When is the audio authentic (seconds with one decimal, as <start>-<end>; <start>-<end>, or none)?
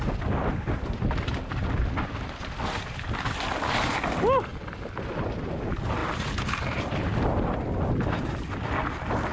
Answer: 0.0-9.3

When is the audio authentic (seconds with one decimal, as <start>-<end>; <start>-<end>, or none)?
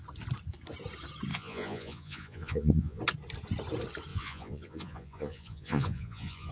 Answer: 0.0-1.3; 3.0-4.1